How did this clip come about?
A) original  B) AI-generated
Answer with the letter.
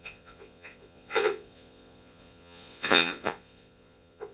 B